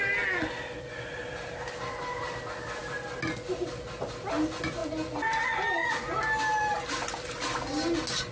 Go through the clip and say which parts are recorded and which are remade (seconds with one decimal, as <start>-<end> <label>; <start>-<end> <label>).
0.0-8.3 recorded